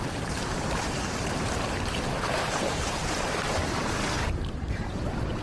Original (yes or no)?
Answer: no